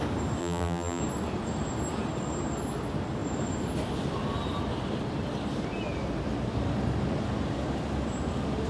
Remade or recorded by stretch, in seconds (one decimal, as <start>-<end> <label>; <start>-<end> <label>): 0.0-0.4 recorded; 0.4-1.0 remade; 1.0-8.7 recorded